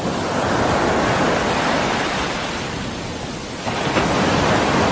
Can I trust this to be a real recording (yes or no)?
yes